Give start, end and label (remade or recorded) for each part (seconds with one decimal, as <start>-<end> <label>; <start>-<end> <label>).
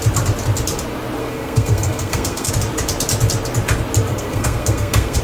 0.0-1.2 recorded; 1.2-2.5 remade; 2.5-4.1 recorded; 4.1-5.2 remade